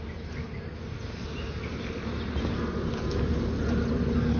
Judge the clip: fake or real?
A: real